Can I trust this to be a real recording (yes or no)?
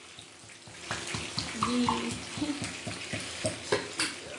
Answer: yes